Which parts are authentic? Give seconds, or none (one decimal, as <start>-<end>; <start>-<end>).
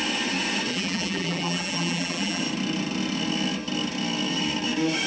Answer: 0.0-0.7; 2.4-5.1